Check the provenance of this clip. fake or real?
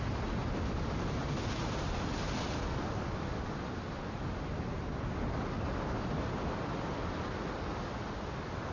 real